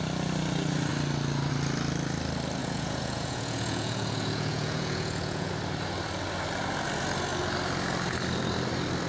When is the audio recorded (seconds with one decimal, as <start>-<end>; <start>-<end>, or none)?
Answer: 0.0-2.6; 5.5-9.1